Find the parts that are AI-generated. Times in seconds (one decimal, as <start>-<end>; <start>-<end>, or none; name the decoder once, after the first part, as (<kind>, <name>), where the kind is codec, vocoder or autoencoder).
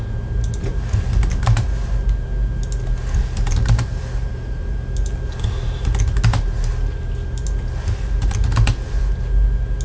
none